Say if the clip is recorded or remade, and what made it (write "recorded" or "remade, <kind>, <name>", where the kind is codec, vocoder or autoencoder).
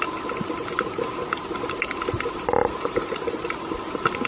recorded